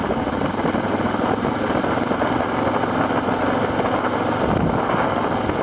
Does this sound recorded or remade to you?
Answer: recorded